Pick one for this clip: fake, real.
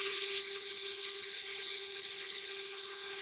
fake